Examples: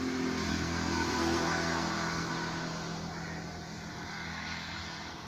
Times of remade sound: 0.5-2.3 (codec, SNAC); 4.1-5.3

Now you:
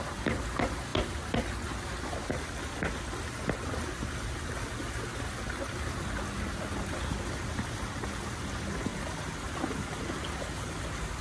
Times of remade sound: none